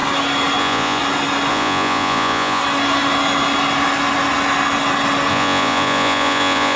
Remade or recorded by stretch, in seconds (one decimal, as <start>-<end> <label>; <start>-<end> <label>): 0.0-0.6 recorded; 0.6-1.0 remade; 1.0-1.5 recorded; 1.5-2.6 remade; 2.6-5.3 recorded; 5.3-6.8 remade